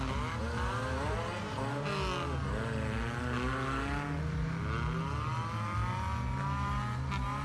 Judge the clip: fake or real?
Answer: real